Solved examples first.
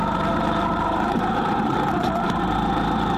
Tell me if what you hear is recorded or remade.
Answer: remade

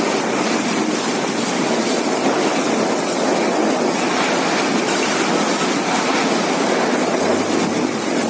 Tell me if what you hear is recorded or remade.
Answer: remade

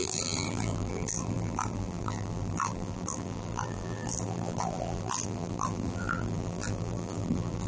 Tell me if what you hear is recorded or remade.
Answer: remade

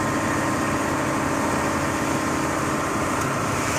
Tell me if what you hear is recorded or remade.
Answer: recorded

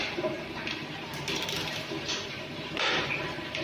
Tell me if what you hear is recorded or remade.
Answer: remade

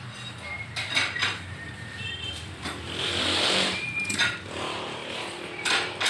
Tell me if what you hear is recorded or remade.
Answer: remade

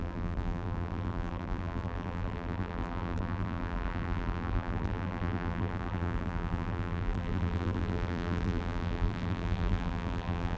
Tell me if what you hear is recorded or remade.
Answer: remade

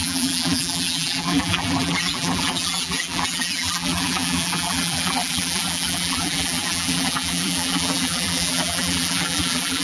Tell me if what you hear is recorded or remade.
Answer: remade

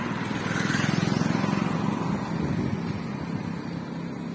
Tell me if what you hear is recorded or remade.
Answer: recorded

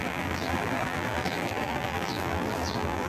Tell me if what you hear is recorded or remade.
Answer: remade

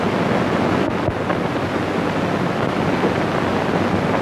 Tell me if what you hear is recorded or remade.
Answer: recorded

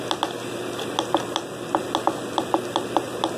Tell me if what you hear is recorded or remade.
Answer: recorded